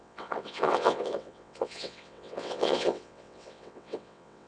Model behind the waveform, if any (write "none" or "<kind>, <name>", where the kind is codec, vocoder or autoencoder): vocoder, WaveNeXt